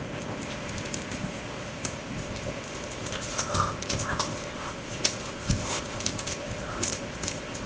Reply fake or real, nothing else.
fake